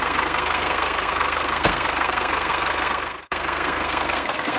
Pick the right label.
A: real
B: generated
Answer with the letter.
B